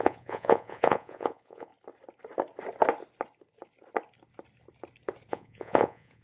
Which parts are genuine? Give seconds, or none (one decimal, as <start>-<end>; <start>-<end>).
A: 1.7-5.3